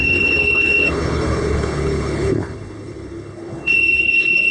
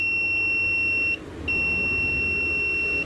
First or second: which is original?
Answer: second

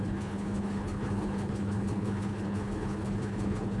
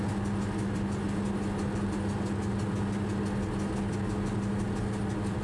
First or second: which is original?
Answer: second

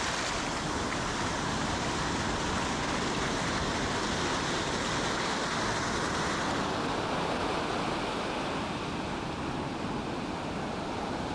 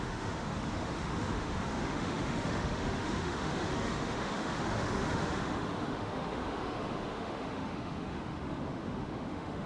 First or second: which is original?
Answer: first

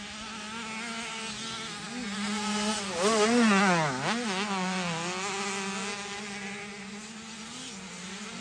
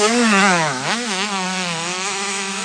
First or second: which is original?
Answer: first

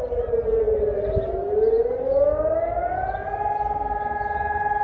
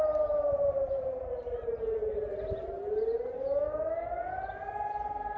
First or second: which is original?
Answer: first